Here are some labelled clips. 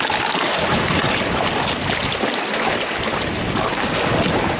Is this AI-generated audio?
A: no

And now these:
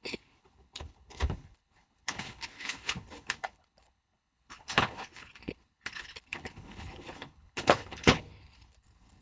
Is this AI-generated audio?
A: yes